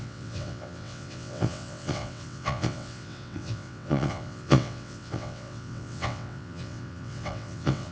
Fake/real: fake